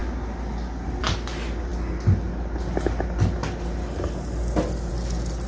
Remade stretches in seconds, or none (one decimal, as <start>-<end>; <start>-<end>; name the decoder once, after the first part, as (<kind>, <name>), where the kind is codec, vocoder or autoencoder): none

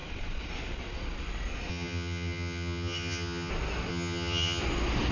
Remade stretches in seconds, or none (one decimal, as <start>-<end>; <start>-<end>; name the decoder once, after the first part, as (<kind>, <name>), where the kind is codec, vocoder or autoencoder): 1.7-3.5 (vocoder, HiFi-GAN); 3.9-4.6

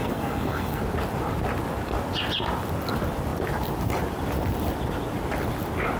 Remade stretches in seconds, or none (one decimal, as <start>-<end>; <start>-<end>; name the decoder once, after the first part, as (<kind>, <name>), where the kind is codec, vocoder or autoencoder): 0.0-0.8 (codec, SNAC)